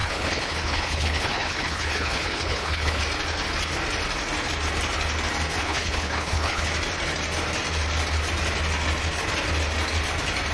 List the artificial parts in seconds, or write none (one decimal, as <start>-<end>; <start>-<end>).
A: 0.0-3.0; 5.6-6.7